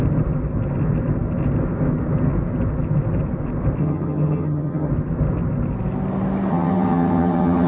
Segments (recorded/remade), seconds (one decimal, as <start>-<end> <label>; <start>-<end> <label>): 0.0-3.8 recorded; 3.8-4.9 remade; 4.9-6.5 recorded; 6.5-7.7 remade